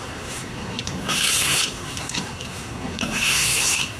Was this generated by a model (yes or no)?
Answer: yes